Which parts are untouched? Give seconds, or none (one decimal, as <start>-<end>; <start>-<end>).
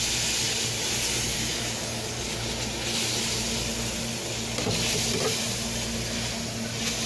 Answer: 0.0-1.3; 2.4-7.1